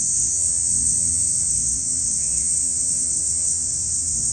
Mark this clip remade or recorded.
remade